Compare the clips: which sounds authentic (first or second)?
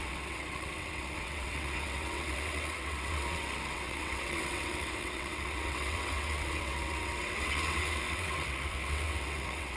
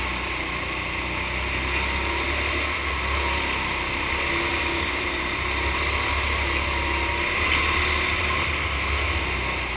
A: second